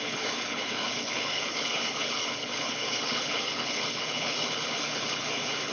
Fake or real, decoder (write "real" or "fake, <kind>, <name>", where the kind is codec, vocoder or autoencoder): fake, codec, HILCodec